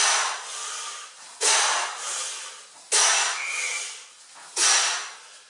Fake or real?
real